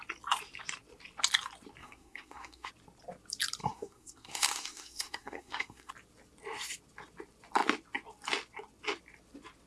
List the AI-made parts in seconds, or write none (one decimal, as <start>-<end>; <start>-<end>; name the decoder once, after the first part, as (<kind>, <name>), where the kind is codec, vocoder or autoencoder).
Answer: 1.8-2.7 (codec, SNAC); 3.6-5.9